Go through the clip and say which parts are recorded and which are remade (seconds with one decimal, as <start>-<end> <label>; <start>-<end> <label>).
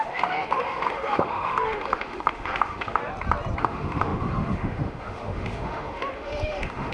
0.0-3.0 remade; 3.0-3.6 recorded; 3.6-6.9 remade